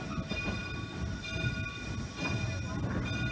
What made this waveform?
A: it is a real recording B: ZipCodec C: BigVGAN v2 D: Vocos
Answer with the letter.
A